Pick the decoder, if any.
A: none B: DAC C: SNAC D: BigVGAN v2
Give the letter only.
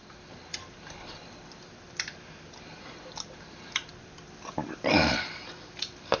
D